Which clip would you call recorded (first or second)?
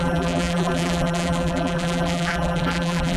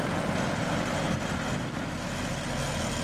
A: second